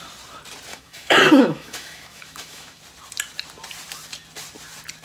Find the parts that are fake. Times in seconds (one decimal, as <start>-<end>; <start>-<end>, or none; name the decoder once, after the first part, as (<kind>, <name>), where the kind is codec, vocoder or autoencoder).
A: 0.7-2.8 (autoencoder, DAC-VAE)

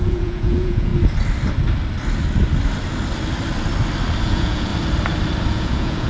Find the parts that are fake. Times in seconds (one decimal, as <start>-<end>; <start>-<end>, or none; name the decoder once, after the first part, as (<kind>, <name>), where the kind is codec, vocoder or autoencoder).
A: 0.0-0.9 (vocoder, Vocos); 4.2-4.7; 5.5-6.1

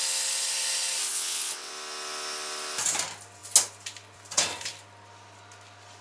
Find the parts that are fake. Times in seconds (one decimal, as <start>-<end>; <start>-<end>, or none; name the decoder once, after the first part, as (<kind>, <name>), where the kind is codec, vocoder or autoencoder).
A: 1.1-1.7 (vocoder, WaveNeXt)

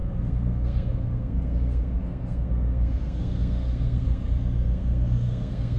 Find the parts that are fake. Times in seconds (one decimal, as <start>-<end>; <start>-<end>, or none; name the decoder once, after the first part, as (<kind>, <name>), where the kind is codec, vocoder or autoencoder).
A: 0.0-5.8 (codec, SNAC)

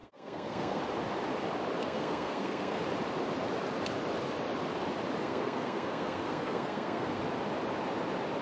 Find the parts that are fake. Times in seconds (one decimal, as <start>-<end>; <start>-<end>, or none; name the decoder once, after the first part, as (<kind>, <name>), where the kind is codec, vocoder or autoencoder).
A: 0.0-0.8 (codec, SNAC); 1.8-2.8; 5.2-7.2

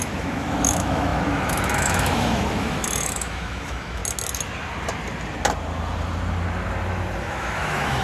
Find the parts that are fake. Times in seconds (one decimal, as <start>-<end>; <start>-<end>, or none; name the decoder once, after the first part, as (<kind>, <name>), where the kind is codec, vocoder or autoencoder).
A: 0.0-4.0 (autoencoder, DAC-VAE); 7.2-8.0